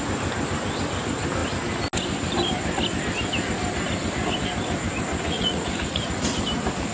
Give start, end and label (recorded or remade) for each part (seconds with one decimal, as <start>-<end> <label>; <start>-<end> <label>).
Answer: 0.0-5.1 recorded; 5.1-6.2 remade; 6.2-6.9 recorded